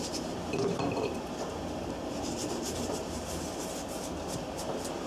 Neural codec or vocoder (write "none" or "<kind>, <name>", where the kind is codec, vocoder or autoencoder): vocoder, BigVGAN v2